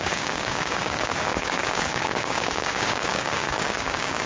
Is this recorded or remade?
remade